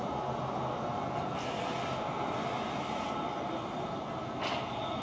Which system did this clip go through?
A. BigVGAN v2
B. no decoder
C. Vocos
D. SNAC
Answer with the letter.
B